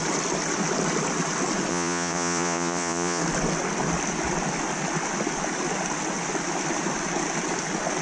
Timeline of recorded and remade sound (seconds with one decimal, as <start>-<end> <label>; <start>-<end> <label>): 0.0-1.7 recorded; 1.7-3.2 remade; 3.2-8.0 recorded